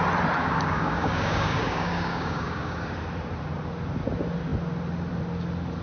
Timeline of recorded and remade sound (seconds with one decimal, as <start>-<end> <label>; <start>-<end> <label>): 0.0-0.4 recorded; 0.4-2.8 remade; 2.8-5.8 recorded